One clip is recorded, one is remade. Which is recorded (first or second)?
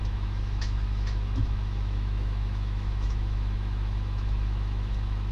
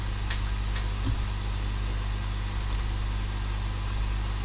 second